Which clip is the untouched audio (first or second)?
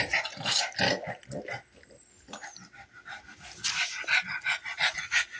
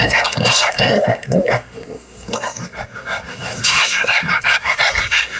first